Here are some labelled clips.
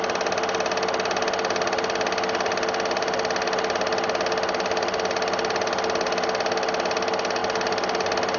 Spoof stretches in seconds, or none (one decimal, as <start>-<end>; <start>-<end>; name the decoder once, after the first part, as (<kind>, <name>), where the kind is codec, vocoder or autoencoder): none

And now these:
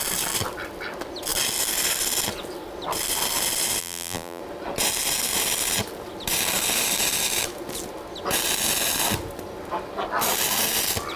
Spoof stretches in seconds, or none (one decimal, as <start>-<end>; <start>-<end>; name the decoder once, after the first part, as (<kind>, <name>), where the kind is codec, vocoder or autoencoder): 3.8-4.4 (vocoder, BigVGAN v2)

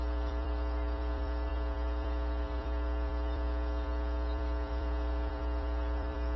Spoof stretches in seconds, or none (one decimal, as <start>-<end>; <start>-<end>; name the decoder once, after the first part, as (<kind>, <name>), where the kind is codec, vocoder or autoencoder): 0.0-6.4 (vocoder, BigVGAN v2)

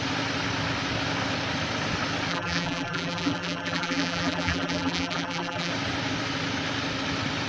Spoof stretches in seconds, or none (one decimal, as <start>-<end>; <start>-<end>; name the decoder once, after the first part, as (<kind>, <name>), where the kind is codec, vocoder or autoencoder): 2.3-5.7 (vocoder, BigVGAN v2)

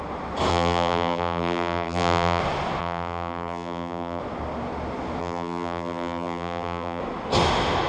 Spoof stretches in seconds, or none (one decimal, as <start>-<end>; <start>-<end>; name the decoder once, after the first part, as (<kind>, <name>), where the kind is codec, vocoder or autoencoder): 0.5-2.4 (vocoder, BigVGAN v2); 2.8-4.2; 5.2-7.0